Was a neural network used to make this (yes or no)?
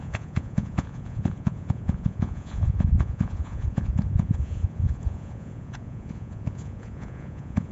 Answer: yes